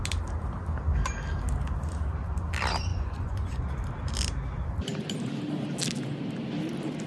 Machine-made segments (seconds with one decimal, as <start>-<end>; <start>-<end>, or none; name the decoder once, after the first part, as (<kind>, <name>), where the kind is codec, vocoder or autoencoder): 2.9-3.7 (vocoder, Vocos)